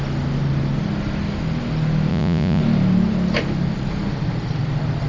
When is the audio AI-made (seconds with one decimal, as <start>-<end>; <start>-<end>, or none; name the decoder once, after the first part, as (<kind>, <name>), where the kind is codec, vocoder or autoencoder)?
2.1-2.6 (vocoder, Vocos)